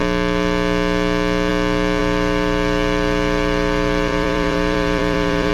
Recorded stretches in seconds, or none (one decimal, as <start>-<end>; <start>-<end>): 0.0-2.0